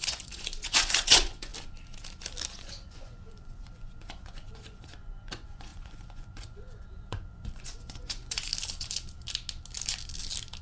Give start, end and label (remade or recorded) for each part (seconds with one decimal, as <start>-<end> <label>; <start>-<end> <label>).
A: 0.0-1.5 remade; 1.5-2.5 recorded; 2.5-8.5 remade; 8.5-10.6 recorded